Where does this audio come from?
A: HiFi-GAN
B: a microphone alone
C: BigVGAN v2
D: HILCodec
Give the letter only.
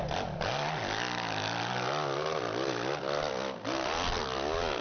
B